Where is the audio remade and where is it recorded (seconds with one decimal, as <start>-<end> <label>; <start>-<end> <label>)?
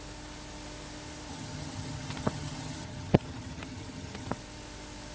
0.0-1.3 recorded; 1.3-4.4 remade; 4.4-5.1 recorded